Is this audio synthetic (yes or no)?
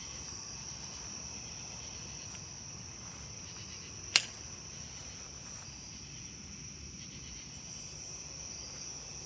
no